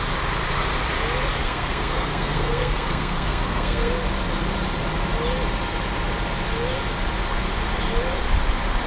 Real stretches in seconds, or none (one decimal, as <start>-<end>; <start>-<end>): 0.0-1.4; 3.9-8.9